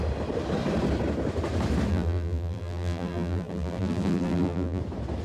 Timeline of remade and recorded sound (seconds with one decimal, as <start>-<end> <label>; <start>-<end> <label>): 0.0-1.9 recorded; 1.9-4.8 remade; 4.8-5.2 recorded

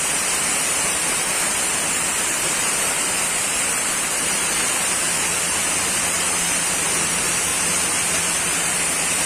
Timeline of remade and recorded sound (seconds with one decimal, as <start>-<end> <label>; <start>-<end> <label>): 0.0-7.5 remade; 7.5-8.6 recorded; 8.6-9.3 remade

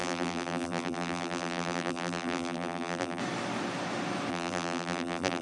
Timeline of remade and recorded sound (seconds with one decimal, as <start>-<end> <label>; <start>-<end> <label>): 0.0-3.2 remade; 3.2-4.3 recorded; 4.3-5.4 remade

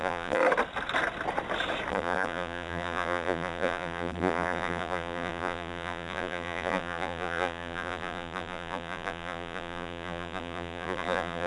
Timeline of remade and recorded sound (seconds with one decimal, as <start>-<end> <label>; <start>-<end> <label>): 0.0-0.4 remade; 0.4-1.9 recorded; 1.9-11.5 remade

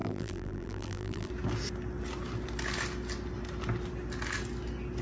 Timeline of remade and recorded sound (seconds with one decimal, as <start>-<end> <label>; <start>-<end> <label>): 0.0-1.3 remade; 1.3-5.0 recorded

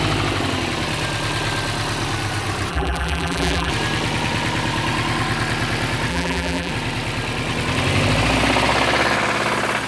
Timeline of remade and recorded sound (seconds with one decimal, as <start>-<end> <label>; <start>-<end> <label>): 0.0-2.7 recorded; 2.7-3.7 remade; 3.7-6.1 recorded; 6.1-6.7 remade; 6.7-9.9 recorded

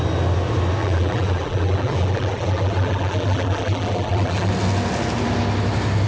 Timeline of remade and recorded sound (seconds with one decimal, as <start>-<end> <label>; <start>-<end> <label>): 0.0-0.8 recorded; 0.8-4.5 remade; 4.5-6.1 recorded